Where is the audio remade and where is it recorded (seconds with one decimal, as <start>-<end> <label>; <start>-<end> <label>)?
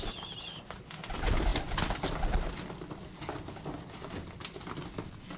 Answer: 0.0-5.4 recorded